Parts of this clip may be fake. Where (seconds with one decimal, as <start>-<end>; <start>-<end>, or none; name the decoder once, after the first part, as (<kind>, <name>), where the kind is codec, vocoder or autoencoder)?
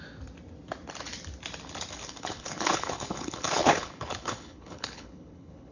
2.0-5.7 (codec, HILCodec)